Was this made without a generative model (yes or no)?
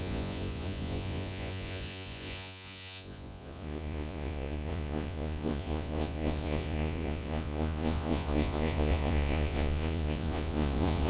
no